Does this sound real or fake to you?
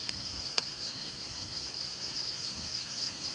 fake